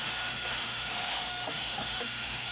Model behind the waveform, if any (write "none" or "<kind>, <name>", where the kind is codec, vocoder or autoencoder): autoencoder, DAC-VAE